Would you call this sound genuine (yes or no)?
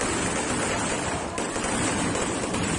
yes